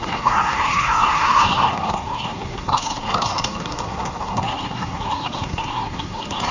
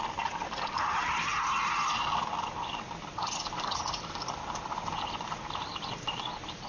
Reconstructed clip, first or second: first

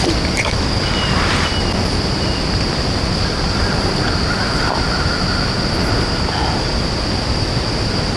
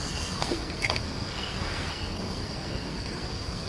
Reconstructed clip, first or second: second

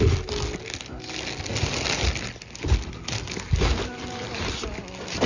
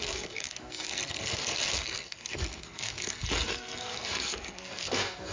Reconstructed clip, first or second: second